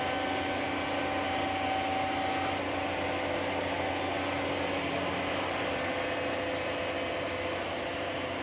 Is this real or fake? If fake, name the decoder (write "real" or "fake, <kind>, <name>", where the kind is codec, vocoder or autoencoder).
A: real